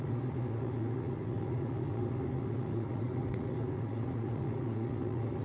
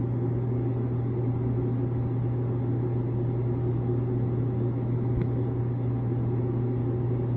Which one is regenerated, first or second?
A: first